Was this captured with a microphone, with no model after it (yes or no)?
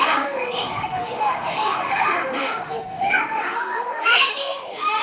no